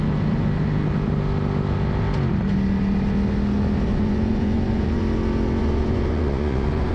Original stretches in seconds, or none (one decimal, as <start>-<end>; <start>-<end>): 0.0-3.9; 5.0-5.6